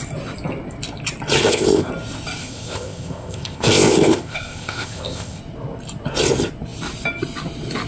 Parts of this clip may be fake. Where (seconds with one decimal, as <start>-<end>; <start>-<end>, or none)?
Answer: 1.4-1.9; 2.4-5.4